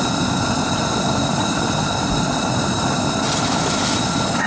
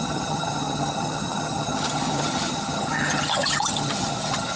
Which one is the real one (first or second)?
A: first